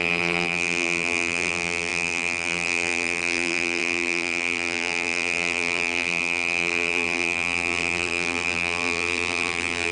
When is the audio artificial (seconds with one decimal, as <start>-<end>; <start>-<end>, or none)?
0.0-9.9